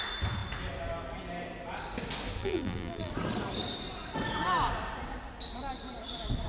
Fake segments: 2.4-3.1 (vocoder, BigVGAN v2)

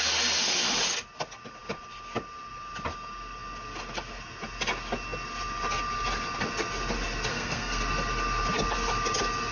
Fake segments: 7.3-7.8 (codec, SNAC)